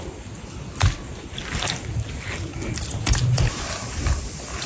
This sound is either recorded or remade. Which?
recorded